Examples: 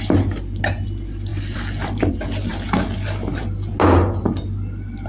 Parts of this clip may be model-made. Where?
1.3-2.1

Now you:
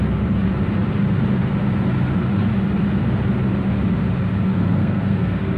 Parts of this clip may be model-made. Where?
4.5-5.6

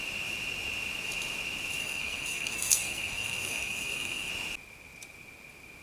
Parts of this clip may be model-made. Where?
1.8-4.3

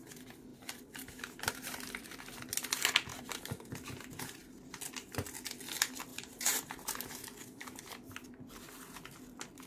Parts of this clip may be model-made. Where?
0.5-2.0; 3.1-3.7; 6.1-7.8

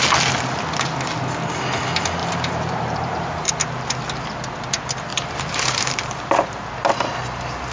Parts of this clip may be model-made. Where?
2.2-3.5; 5.1-6.7